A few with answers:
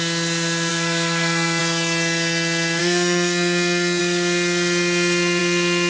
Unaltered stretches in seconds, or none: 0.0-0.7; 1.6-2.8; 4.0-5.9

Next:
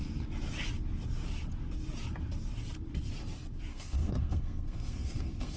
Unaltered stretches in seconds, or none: 0.0-3.7